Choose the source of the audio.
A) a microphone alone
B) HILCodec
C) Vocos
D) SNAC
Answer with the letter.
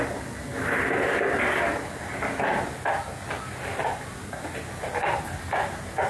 A